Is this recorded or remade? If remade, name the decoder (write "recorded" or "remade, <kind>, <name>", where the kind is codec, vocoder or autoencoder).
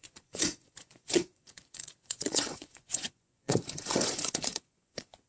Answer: remade, vocoder, Vocos